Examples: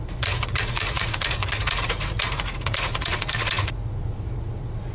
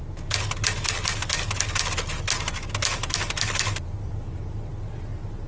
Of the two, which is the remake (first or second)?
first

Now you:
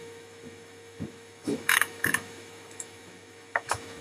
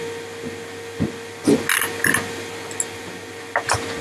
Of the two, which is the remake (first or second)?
first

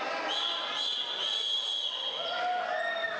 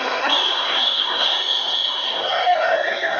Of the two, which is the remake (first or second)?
second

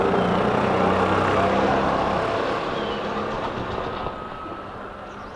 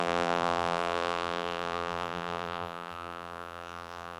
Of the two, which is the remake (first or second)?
second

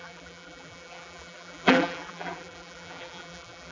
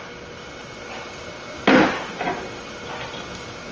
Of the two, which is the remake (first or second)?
first